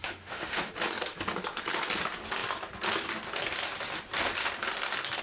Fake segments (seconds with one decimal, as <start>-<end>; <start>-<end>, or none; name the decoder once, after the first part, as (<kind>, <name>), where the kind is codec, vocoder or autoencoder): 0.0-0.7 (autoencoder, DAC-VAE)